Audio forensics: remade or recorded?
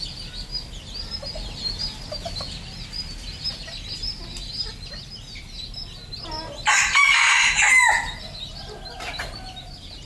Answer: recorded